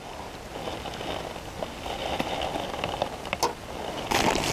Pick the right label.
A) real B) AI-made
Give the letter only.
A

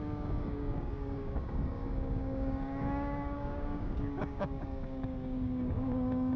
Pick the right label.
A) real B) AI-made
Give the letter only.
B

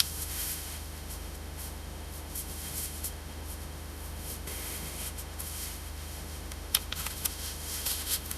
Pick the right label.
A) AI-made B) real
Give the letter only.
A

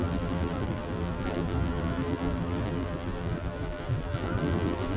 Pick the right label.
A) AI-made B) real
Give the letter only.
A